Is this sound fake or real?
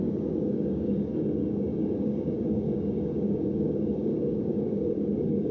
fake